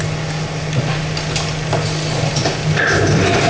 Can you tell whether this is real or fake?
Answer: real